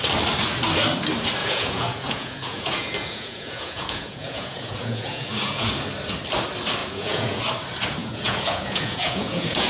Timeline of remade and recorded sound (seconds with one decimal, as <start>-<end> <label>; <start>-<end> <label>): 0.0-1.4 recorded; 1.4-5.7 remade; 5.7-6.8 recorded; 6.8-7.4 remade; 7.4-8.0 recorded; 8.0-9.7 remade